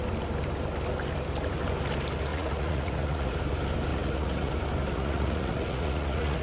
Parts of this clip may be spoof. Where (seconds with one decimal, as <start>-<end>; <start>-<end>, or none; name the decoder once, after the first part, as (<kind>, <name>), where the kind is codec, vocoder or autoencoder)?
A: 2.3-3.3 (vocoder, Vocos); 3.9-4.5; 4.9-6.4